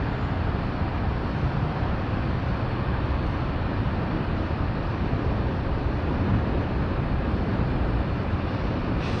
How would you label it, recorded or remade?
remade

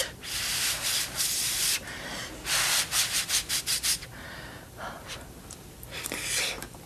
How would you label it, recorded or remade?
remade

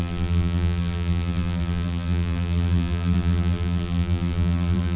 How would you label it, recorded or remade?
remade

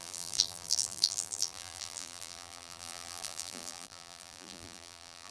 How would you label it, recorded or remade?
remade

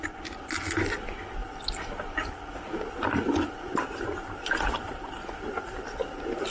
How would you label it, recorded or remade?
recorded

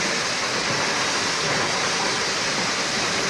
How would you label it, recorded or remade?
recorded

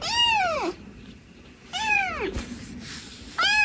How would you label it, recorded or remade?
remade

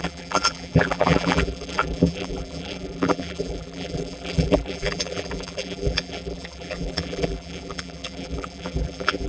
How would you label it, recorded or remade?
remade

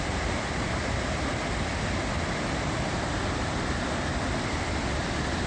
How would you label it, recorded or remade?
remade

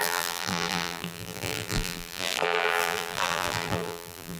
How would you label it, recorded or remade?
remade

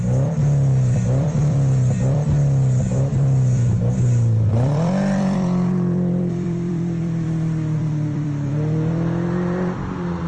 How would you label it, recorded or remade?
remade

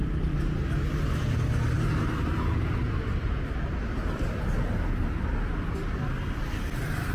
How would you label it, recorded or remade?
recorded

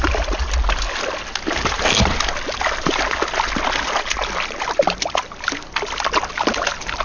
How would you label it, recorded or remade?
recorded